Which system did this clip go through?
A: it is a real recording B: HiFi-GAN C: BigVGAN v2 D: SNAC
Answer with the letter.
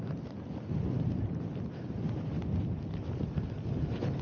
A